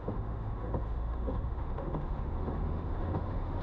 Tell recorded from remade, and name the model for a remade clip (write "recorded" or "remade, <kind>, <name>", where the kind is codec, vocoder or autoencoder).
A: remade, autoencoder, DAC-VAE